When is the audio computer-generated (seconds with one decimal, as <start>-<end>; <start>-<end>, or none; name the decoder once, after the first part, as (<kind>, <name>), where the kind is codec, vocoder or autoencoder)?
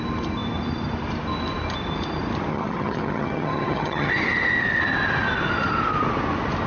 2.5-4.1 (vocoder, HiFi-GAN)